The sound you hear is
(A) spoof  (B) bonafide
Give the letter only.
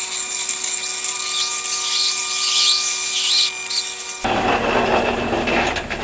B